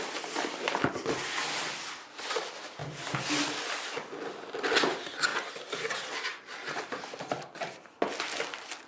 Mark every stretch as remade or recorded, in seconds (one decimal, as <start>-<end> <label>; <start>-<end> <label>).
0.0-8.9 recorded